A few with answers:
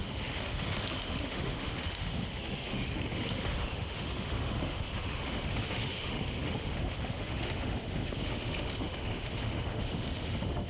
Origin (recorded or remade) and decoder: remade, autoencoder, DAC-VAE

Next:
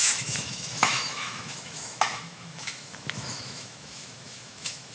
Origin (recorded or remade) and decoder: remade, autoencoder, DAC-VAE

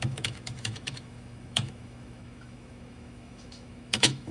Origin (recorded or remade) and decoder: remade, autoencoder, DAC-VAE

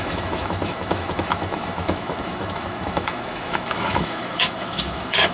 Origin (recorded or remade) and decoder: remade, autoencoder, DAC-VAE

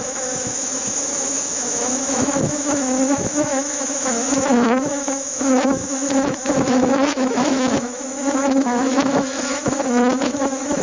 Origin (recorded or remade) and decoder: remade, autoencoder, DAC-VAE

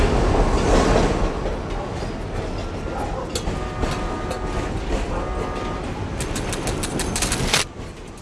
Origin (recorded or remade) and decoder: recorded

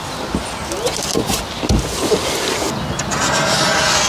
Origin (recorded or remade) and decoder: recorded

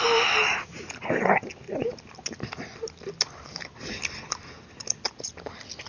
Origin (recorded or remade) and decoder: recorded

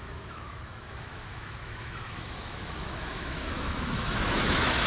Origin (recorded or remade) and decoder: remade, autoencoder, DAC-VAE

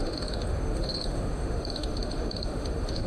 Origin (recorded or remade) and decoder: remade, autoencoder, DAC-VAE